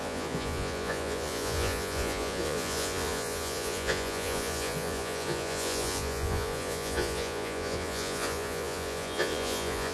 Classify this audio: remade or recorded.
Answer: remade